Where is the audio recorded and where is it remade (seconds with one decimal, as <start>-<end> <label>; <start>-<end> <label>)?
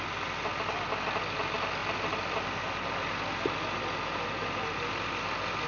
0.0-5.7 recorded